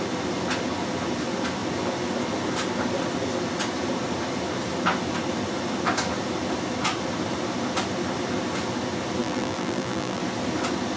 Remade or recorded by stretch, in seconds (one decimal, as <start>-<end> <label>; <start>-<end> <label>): 0.0-9.2 recorded; 9.2-10.2 remade; 10.2-11.0 recorded